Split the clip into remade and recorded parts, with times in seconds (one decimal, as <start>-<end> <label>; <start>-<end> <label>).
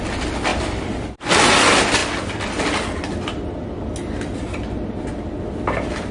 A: 0.0-6.1 recorded